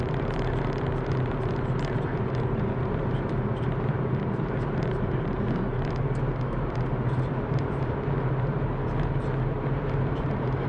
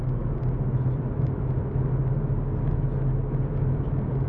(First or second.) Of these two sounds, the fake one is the first